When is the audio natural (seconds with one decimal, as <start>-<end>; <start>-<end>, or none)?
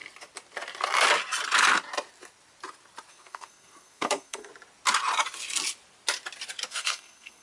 0.0-3.1; 4.5-6.7